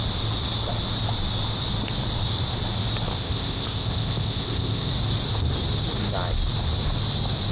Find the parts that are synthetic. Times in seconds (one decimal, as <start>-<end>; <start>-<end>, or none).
3.1-4.9